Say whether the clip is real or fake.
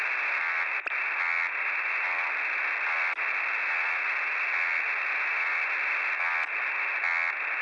real